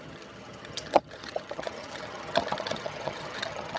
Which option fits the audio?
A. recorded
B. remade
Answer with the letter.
B